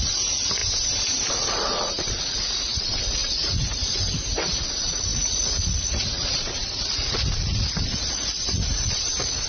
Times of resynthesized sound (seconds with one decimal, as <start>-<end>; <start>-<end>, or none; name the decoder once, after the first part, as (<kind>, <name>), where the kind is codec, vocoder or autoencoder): 0.0-0.6 (vocoder, Vocos); 1.3-9.5